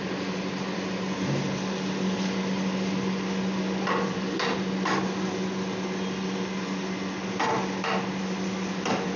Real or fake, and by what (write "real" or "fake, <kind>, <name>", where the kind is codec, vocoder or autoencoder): real